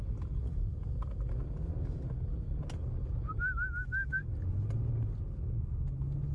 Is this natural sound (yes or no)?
yes